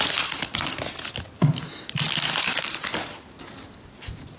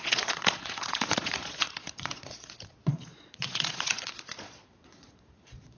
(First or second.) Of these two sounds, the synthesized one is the second